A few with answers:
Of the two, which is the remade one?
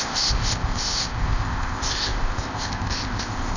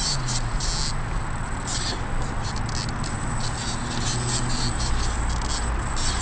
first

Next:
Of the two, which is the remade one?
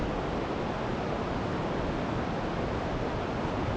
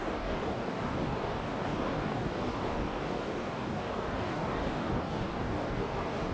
second